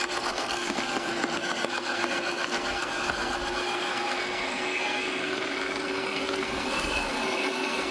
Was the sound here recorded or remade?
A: remade